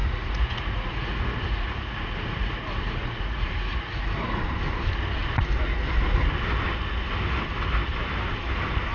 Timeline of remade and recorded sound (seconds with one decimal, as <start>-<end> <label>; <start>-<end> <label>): 0.0-4.4 remade; 4.4-8.9 recorded